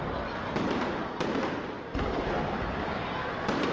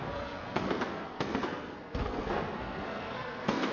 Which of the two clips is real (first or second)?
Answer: first